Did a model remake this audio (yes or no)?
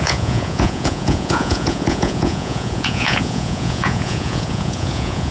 yes